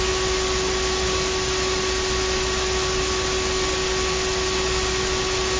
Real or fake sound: real